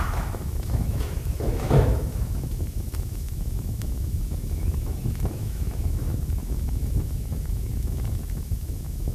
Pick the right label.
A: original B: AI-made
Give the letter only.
B